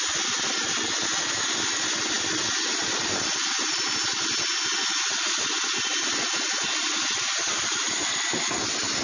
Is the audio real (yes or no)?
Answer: yes